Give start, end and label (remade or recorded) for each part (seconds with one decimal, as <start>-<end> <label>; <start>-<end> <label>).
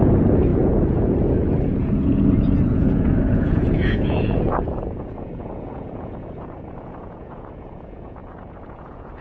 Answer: 0.0-9.2 remade